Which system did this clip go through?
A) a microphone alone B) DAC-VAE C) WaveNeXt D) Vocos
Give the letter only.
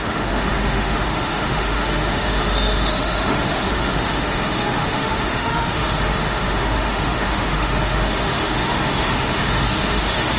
B